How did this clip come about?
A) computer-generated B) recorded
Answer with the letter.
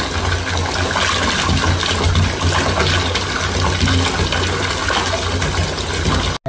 B